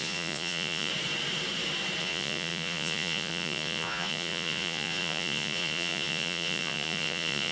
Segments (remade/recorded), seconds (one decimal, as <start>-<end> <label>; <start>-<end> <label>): 0.0-0.9 remade; 0.9-2.0 recorded; 2.0-7.5 remade